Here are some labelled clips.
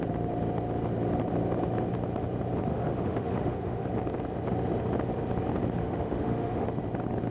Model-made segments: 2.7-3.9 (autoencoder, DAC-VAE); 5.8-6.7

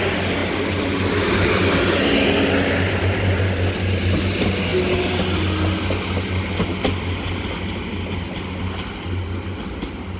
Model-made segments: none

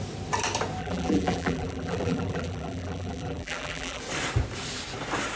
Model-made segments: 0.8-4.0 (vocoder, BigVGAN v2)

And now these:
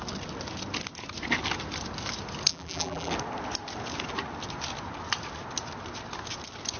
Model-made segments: 2.5-3.1 (vocoder, BigVGAN v2)

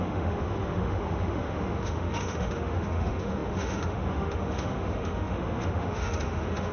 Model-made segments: 0.0-6.7 (autoencoder, DAC-VAE)